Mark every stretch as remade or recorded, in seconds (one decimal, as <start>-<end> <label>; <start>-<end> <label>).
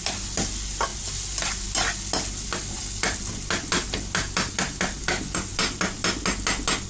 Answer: 0.0-6.9 recorded